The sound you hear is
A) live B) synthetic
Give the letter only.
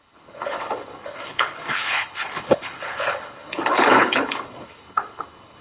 B